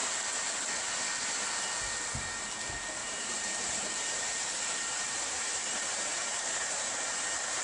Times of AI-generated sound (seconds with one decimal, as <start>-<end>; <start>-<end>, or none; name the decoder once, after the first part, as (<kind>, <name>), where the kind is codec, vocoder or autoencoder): 3.0-7.6 (vocoder, BigVGAN v2)